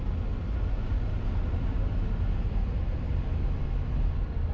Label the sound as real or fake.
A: real